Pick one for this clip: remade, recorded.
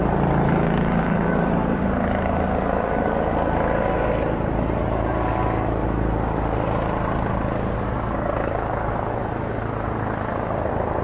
recorded